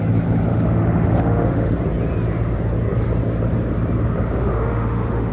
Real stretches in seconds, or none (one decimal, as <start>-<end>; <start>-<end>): 0.0-0.5; 1.7-4.4